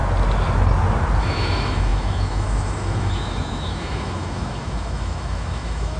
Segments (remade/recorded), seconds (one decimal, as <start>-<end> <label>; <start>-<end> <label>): 0.0-1.2 recorded; 1.2-6.0 remade